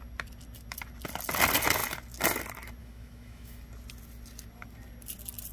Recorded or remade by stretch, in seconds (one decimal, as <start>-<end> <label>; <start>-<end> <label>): 0.0-2.8 recorded; 2.8-3.6 remade; 3.6-5.5 recorded